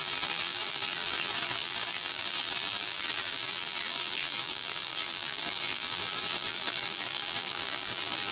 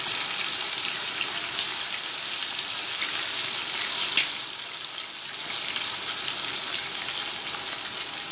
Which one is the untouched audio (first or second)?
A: second